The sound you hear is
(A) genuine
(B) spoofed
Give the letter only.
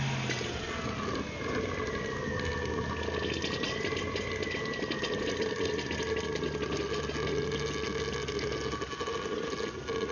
A